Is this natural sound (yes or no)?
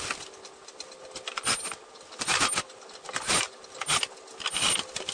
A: yes